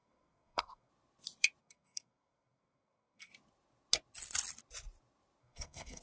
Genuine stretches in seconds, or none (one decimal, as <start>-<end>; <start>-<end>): 0.9-1.6; 3.3-5.4

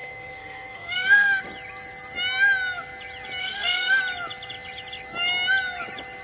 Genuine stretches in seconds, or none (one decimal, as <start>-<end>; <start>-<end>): 1.4-3.4; 4.0-6.2

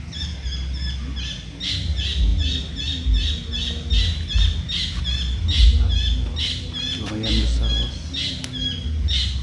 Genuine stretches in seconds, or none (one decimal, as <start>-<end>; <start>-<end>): 0.0-9.4